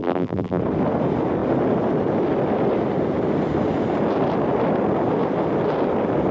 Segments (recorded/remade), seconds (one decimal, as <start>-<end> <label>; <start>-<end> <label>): 0.0-0.6 remade; 0.6-6.3 recorded